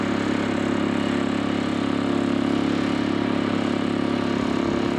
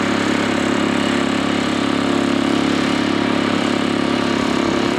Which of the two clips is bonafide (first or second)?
first